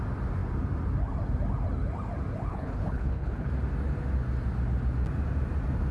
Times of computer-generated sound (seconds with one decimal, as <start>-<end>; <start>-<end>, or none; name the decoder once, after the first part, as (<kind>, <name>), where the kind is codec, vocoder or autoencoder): 2.5-3.5 (codec, HILCodec)